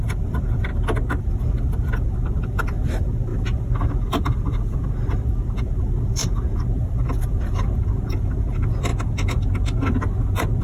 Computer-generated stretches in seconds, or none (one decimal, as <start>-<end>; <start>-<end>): 0.0-0.7; 1.2-8.9